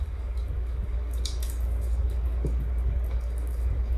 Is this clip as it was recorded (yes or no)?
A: no